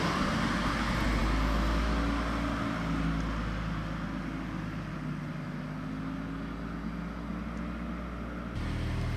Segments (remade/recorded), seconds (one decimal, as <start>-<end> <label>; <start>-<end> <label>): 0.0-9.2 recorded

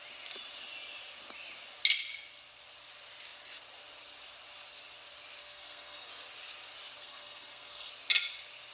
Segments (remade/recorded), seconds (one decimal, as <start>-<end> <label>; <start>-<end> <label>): 0.0-5.4 recorded; 5.4-6.1 remade; 6.1-7.0 recorded; 7.0-7.9 remade; 7.9-8.7 recorded

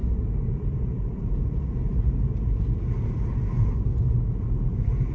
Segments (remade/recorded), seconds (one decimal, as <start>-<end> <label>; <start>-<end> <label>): 0.0-3.1 remade; 3.1-5.1 recorded

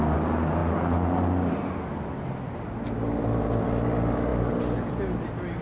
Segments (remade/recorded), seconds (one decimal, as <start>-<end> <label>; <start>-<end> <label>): 0.0-5.6 recorded